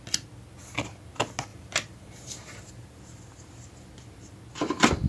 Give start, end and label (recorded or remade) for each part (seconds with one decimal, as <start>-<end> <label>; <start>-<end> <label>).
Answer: 0.0-1.5 recorded; 1.5-2.9 remade; 2.9-5.1 recorded